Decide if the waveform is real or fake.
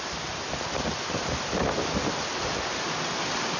real